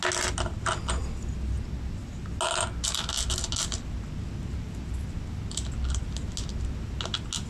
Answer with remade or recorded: recorded